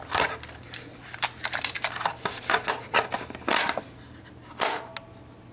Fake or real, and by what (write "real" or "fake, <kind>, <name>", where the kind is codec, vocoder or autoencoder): real